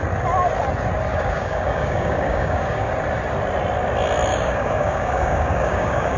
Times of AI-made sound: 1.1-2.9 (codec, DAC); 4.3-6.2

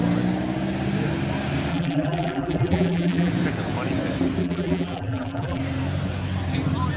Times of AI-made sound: 1.7-3.3 (vocoder, BigVGAN v2); 4.4-5.6

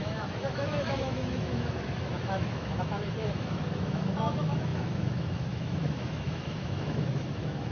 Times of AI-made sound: 0.0-7.7 (autoencoder, DAC-VAE)

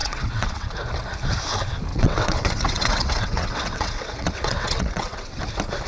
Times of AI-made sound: 0.0-0.7 (vocoder, WaveNeXt); 1.9-5.4